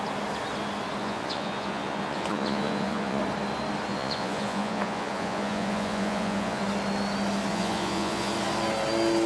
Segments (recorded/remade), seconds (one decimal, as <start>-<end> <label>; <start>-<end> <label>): 0.0-1.0 recorded; 1.0-3.2 remade; 3.2-3.9 recorded; 3.9-6.6 remade; 6.6-7.5 recorded; 7.5-8.3 remade; 8.3-9.3 recorded